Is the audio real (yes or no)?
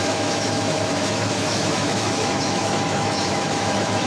no